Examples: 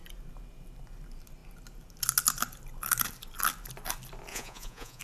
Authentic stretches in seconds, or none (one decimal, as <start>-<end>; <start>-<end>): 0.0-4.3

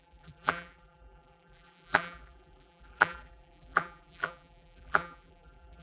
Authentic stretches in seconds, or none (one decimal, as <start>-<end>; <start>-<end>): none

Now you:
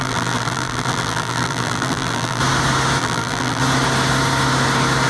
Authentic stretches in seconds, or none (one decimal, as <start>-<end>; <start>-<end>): 2.4-3.0; 3.6-5.1

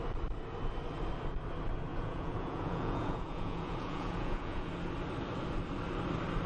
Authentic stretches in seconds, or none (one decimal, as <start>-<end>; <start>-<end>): 0.0-1.9; 4.7-6.5

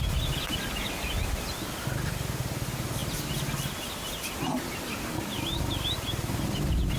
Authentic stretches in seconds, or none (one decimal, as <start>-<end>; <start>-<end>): 0.0-7.0

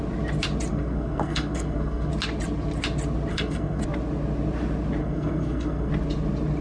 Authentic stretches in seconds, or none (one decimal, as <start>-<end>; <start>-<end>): 0.0-0.7; 2.1-3.3; 3.8-5.0; 5.9-6.6